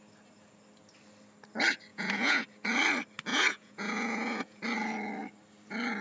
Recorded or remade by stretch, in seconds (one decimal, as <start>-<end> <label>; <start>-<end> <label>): 0.0-1.9 recorded; 1.9-2.4 remade; 2.4-3.3 recorded; 3.3-4.6 remade; 4.6-6.0 recorded